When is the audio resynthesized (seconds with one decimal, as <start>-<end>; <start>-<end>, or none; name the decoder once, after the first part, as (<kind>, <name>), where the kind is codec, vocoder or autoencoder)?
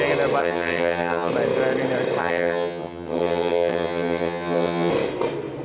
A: 0.4-1.3 (vocoder, HiFi-GAN); 2.2-4.9